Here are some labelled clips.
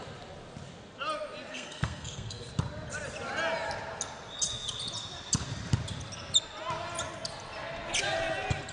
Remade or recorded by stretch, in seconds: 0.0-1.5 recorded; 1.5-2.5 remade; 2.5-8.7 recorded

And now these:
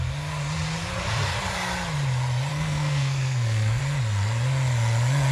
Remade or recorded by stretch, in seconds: 0.0-2.5 recorded; 2.5-3.8 remade; 3.8-5.3 recorded

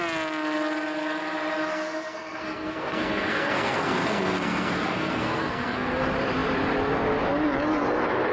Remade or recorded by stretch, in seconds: 0.0-1.7 recorded; 1.7-6.0 remade; 6.0-8.3 recorded

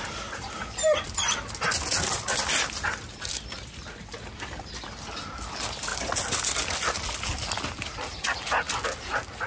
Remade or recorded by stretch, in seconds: 0.0-9.5 recorded